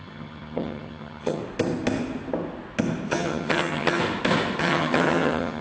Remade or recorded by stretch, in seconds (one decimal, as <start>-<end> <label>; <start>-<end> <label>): 0.0-1.4 remade; 1.4-3.1 recorded; 3.1-4.0 remade; 4.0-4.6 recorded; 4.6-5.6 remade